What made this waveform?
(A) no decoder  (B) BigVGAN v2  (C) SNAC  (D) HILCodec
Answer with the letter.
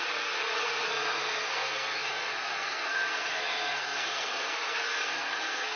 C